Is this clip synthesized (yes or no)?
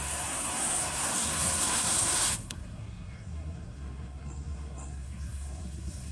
yes